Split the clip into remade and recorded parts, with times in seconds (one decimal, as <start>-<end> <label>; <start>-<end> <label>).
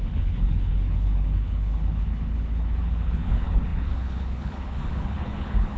0.0-5.8 remade